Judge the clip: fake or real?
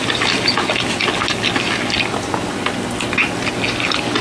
real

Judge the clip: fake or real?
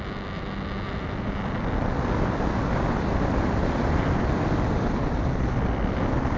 real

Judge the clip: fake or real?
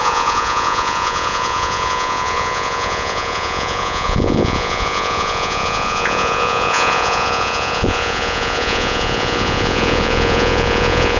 fake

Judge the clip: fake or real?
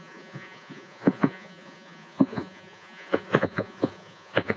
fake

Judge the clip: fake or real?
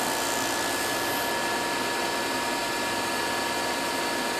real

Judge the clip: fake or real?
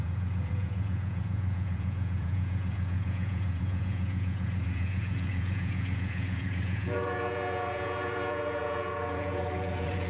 fake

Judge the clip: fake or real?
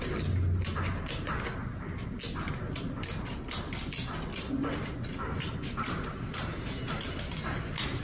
real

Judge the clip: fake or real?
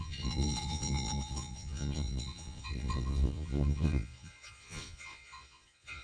fake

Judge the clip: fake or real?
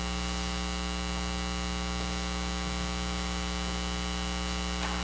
real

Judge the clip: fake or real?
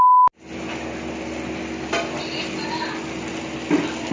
real